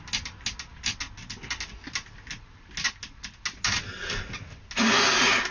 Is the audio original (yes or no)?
yes